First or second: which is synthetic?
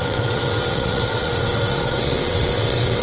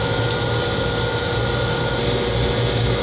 first